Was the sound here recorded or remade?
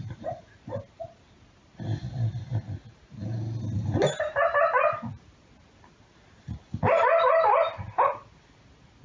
recorded